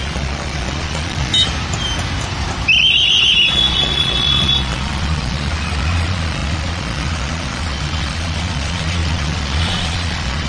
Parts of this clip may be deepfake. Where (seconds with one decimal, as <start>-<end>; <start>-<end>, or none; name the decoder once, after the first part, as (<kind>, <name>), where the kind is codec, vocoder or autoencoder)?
0.0-1.3 (vocoder, Vocos); 3.5-10.5